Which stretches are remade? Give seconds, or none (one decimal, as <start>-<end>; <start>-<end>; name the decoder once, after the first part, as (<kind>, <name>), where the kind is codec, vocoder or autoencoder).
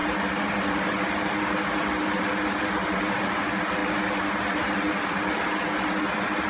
none